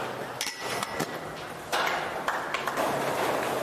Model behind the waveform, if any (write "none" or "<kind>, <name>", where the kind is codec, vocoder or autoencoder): none